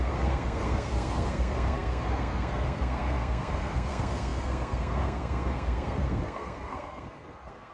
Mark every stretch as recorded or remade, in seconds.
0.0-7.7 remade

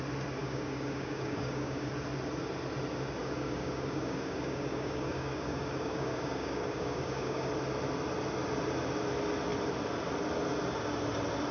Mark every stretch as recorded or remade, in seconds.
0.0-0.4 recorded; 0.4-1.9 remade; 1.9-3.2 recorded; 3.2-7.5 remade; 7.5-11.5 recorded

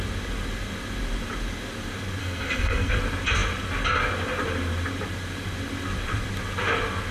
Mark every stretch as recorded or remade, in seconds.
0.0-2.2 recorded; 2.2-2.9 remade; 2.9-7.1 recorded

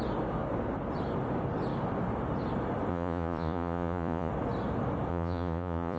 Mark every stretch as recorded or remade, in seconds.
0.0-2.9 recorded; 2.9-4.3 remade; 4.3-5.1 recorded; 5.1-6.0 remade

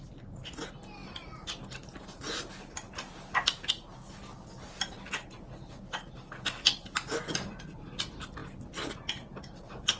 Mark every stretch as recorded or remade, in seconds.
0.0-10.0 recorded

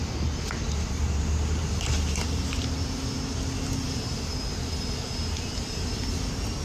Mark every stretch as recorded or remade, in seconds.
0.0-6.6 recorded

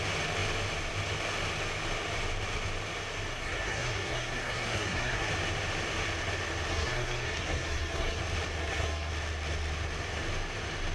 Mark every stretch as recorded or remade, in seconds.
0.0-3.3 recorded; 3.3-5.3 remade; 5.3-6.7 recorded; 6.7-8.2 remade; 8.2-8.6 recorded; 8.6-9.1 remade; 9.1-10.9 recorded